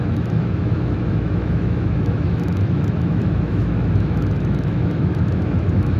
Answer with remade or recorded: remade